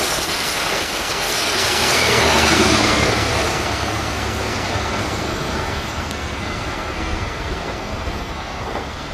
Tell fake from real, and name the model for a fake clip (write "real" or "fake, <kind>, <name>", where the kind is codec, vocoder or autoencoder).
fake, codec, SNAC